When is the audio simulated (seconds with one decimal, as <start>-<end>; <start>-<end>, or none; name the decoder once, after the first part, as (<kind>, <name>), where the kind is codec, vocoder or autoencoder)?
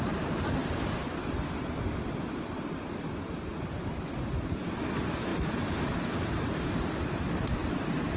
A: none